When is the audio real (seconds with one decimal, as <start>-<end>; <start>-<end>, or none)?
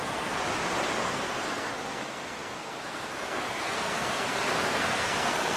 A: 0.4-1.0